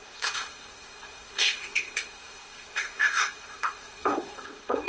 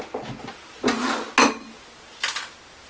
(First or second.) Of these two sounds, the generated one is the first